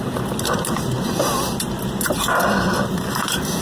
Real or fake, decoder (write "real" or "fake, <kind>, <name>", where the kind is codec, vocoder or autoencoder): real